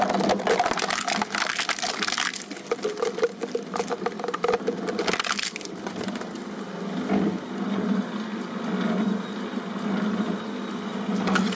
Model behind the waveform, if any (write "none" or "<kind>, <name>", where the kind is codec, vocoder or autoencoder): none